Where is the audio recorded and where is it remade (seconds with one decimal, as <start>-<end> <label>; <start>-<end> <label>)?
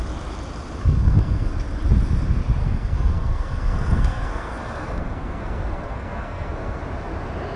0.0-0.8 recorded; 0.8-1.5 remade; 1.5-2.6 recorded; 2.6-6.8 remade; 6.8-7.6 recorded